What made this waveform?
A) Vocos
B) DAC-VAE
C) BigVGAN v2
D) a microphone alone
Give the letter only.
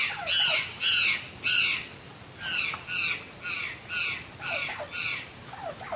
D